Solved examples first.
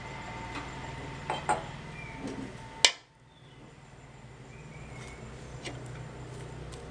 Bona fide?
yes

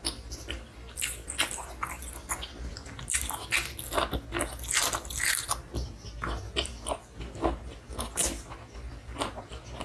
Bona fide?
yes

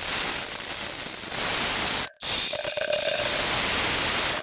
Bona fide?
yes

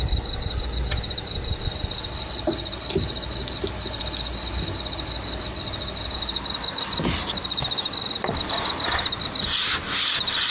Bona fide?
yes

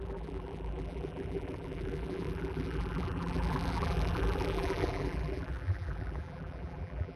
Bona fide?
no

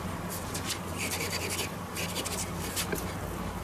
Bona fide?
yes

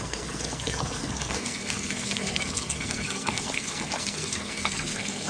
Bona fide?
no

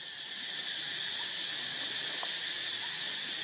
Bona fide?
no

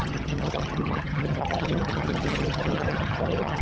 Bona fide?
no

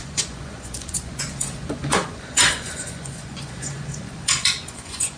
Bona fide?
no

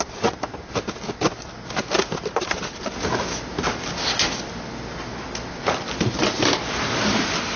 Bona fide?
yes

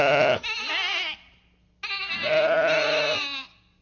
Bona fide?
yes